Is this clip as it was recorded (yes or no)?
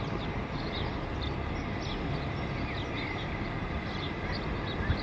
yes